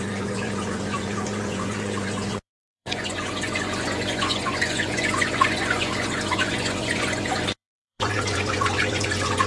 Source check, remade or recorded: remade